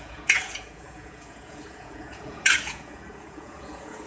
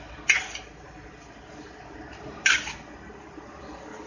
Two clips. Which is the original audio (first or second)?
second